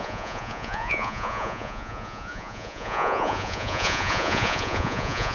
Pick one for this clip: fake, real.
fake